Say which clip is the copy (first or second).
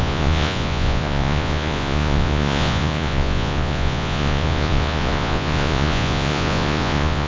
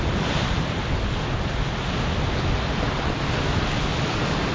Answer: first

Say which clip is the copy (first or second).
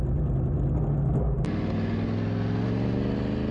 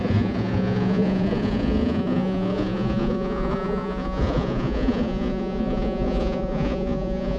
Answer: second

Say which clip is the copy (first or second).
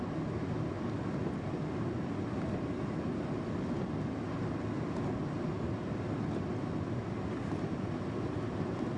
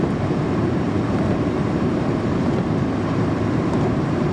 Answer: second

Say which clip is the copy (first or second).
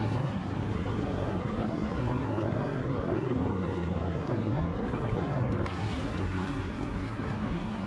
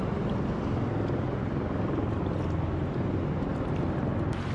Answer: first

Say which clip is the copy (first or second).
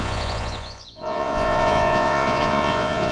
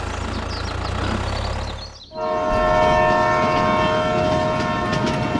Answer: first